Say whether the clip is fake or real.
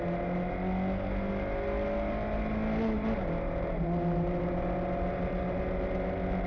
real